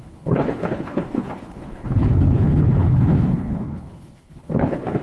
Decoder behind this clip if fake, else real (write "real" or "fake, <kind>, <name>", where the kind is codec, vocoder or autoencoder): fake, codec, HILCodec